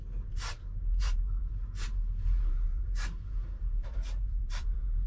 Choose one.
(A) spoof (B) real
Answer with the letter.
A